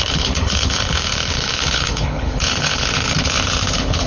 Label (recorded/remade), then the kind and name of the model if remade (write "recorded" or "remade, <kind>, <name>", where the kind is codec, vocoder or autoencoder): remade, codec, HILCodec